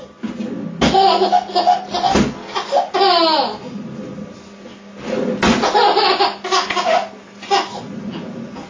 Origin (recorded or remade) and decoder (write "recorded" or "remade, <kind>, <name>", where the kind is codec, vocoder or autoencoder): recorded